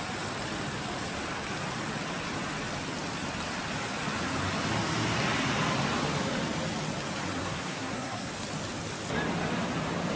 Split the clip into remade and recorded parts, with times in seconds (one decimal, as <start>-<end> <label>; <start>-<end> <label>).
0.0-7.4 recorded; 7.4-8.3 remade; 8.3-10.2 recorded